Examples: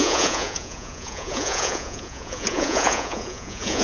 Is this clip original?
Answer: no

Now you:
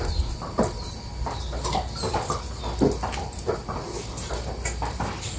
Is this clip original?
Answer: yes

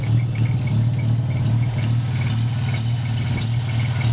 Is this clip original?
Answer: yes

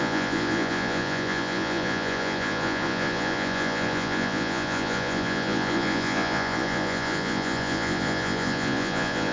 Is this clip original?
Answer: no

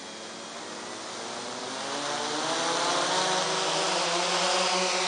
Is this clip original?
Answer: yes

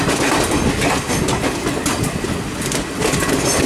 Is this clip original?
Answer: yes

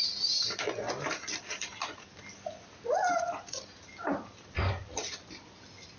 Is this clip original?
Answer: yes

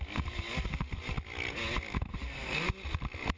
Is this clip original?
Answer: yes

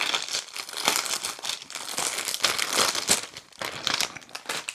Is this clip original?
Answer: yes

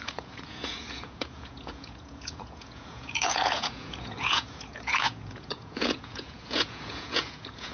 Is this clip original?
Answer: no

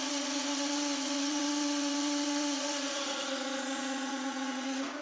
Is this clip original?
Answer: no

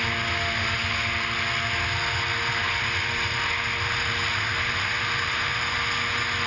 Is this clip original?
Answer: yes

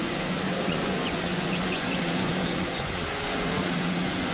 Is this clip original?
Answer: no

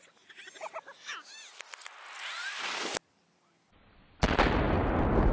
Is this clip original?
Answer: yes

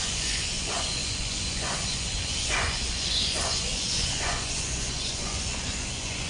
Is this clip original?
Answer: no